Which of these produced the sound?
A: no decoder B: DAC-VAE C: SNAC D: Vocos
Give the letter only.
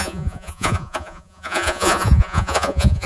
D